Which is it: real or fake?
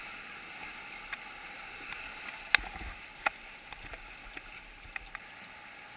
real